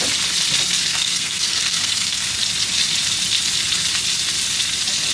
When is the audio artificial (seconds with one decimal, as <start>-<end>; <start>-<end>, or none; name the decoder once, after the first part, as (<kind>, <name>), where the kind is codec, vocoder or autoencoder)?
0.9-2.3 (codec, SNAC)